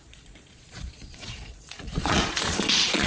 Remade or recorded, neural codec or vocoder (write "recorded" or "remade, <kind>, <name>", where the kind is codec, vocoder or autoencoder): remade, vocoder, Vocos